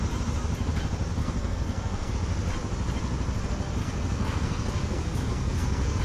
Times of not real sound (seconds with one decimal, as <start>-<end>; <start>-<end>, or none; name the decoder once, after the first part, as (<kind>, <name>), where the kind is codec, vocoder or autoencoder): 1.2-2.1 (codec, SNAC); 3.8-6.0

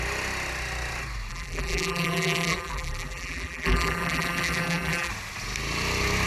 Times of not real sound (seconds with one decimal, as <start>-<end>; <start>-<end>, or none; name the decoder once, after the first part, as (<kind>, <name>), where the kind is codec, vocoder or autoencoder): 1.3-5.1 (vocoder, BigVGAN v2)

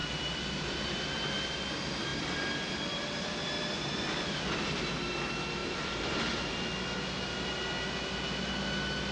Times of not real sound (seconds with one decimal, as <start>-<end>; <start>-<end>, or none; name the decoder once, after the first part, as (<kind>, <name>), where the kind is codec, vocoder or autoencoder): 0.0-0.7 (vocoder, BigVGAN v2); 2.1-3.7; 5.6-6.5